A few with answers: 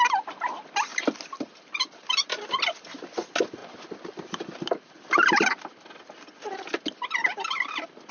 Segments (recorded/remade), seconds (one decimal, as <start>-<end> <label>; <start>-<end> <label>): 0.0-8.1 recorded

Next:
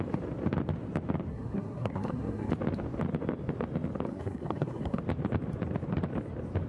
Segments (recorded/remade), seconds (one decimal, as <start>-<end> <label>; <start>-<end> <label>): 0.0-1.3 recorded; 1.3-2.5 remade; 2.5-4.1 recorded; 4.1-5.0 remade; 5.0-6.7 recorded

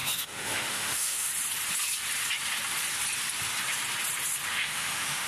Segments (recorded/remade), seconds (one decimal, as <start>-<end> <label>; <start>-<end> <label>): 0.0-1.3 remade; 1.3-4.5 recorded; 4.5-5.3 remade

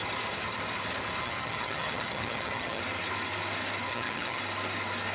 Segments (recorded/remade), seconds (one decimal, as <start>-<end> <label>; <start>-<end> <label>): 0.0-1.2 recorded; 1.2-2.8 remade; 2.8-3.9 recorded; 3.9-4.4 remade; 4.4-5.1 recorded